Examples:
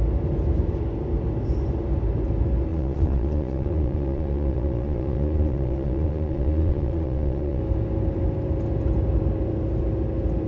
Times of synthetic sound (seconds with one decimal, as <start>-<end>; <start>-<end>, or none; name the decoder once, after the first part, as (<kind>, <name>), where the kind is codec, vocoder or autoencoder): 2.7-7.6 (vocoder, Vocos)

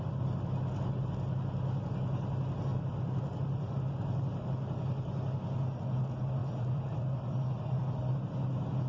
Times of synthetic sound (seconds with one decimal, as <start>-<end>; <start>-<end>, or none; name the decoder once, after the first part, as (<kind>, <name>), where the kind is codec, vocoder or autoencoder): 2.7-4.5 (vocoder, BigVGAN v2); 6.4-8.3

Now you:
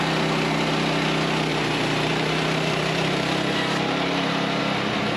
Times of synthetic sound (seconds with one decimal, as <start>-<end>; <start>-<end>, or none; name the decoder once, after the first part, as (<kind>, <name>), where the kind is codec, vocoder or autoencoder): 1.5-4.6 (vocoder, BigVGAN v2)

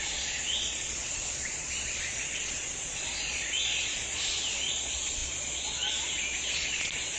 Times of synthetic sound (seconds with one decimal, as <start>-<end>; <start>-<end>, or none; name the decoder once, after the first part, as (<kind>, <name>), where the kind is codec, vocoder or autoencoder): 0.0-7.2 (vocoder, Vocos)

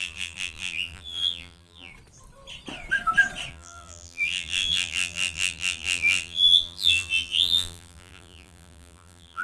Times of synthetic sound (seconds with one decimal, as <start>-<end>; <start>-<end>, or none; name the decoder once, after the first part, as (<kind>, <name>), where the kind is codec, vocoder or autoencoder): 0.0-1.9 (vocoder, BigVGAN v2); 3.5-9.4

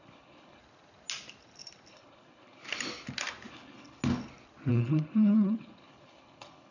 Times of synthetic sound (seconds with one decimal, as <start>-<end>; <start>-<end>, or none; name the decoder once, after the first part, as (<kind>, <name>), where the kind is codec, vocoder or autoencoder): 0.0-0.6 (codec, HILCodec); 1.9-2.6; 3.5-4.0; 4.7-6.7